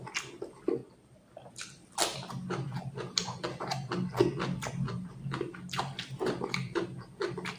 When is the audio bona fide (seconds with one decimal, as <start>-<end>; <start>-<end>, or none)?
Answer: 0.0-7.6